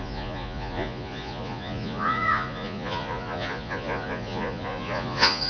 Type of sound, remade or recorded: remade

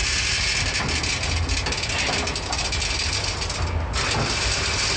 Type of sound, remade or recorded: recorded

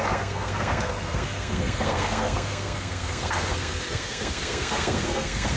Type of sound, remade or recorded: remade